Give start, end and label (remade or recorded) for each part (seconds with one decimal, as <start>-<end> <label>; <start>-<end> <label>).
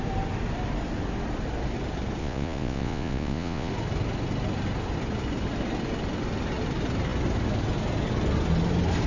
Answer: 0.0-2.2 recorded; 2.2-3.7 remade; 3.7-9.1 recorded